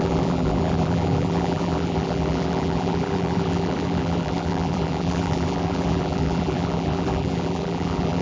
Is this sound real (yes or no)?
no